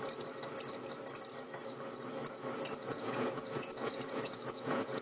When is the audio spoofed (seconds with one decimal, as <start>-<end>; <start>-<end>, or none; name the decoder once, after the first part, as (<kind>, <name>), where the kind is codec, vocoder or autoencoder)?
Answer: 2.8-5.0 (vocoder, Vocos)